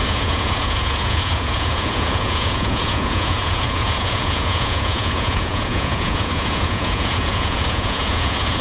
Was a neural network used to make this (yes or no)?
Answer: yes